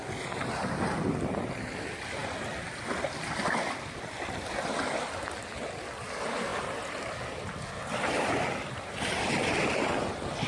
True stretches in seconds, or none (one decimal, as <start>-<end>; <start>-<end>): 0.0-10.5